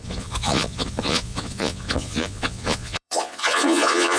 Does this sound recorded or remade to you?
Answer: remade